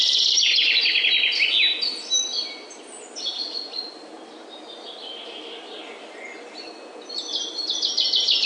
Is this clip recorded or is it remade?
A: recorded